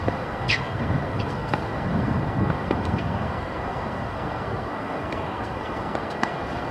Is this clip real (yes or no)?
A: no